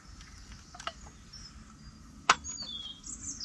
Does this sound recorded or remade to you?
recorded